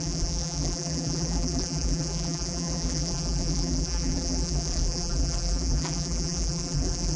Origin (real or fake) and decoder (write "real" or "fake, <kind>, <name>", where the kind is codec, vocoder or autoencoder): fake, vocoder, BigVGAN v2